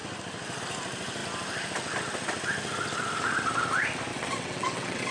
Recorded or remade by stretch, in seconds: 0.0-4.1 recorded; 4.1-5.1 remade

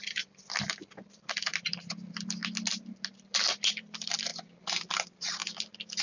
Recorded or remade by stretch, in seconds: 0.0-2.4 remade; 2.4-3.7 recorded; 3.7-4.3 remade; 4.3-4.8 recorded; 4.8-5.4 remade; 5.4-6.0 recorded

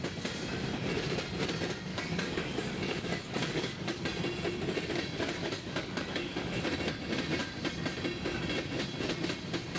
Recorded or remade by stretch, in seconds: 0.0-1.9 recorded; 1.9-4.0 remade; 4.0-5.4 recorded; 5.4-6.6 remade; 6.6-9.8 recorded

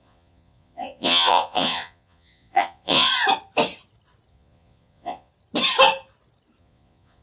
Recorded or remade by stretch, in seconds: 0.0-3.1 remade; 3.1-4.3 recorded; 4.3-5.3 remade; 5.3-6.6 recorded; 6.6-7.2 remade